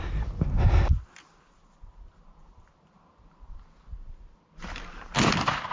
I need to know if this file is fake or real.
real